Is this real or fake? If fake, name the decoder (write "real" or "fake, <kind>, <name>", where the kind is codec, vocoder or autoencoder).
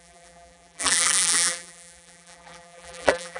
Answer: fake, vocoder, BigVGAN v2